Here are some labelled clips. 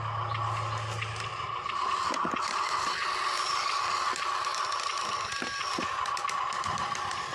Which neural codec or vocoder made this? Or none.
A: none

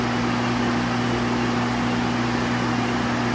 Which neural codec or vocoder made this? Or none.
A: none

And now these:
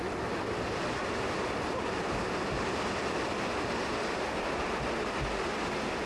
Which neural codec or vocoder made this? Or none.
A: none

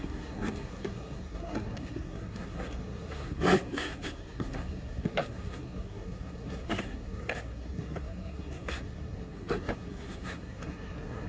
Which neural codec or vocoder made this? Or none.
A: codec, SNAC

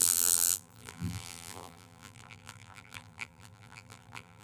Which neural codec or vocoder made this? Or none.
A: vocoder, BigVGAN v2